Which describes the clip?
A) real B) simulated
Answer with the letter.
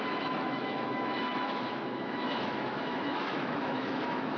B